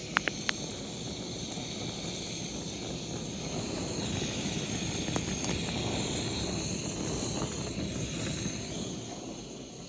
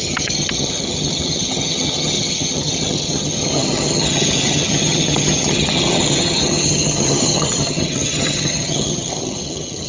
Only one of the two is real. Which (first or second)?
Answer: first